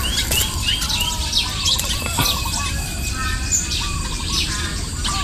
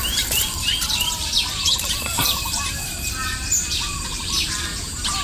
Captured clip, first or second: first